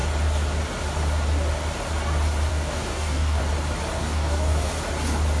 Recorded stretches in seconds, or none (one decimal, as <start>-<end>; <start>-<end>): 0.0-2.5; 3.4-4.0; 4.7-5.4